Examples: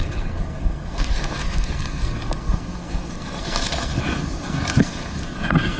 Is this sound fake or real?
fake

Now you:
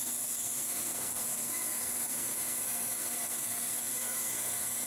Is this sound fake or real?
fake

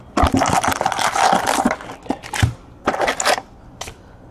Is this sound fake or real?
real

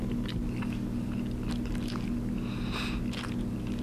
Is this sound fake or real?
real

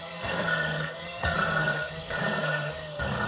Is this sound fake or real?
fake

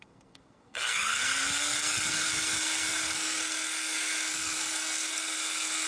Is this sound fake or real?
fake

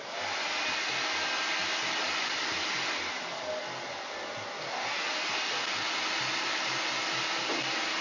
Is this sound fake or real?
real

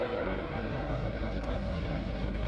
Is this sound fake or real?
fake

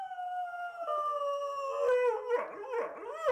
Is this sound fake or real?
real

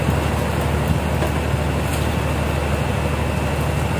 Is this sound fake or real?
real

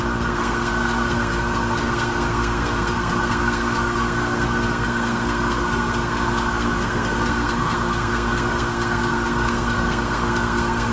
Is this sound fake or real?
fake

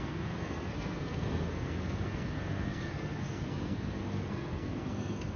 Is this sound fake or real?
fake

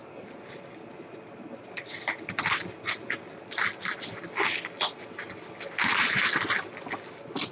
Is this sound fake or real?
real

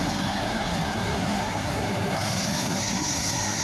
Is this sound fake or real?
fake